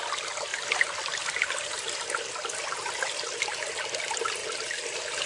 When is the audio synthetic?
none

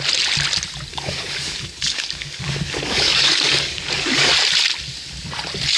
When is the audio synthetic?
0.9-4.3 (codec, DAC)

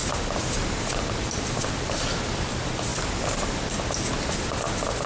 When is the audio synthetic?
none

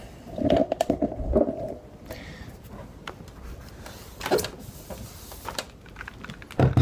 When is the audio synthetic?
none

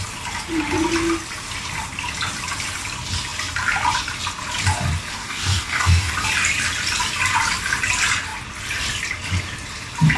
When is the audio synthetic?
5.1-6.1 (codec, DAC)